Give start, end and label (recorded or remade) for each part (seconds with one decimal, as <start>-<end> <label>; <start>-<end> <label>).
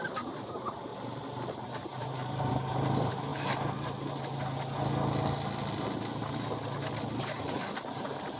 0.0-0.9 remade; 0.9-1.5 recorded; 1.5-3.3 remade; 3.3-7.2 recorded; 7.2-8.4 remade